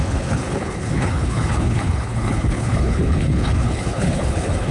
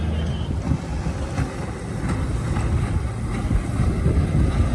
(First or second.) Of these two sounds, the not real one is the first